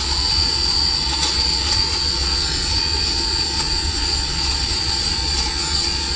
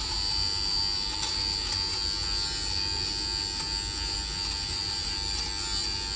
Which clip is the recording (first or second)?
second